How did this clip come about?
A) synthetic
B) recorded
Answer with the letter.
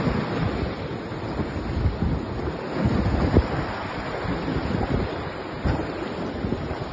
B